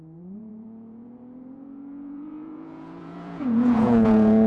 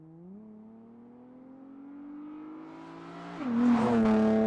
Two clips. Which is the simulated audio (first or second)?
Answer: first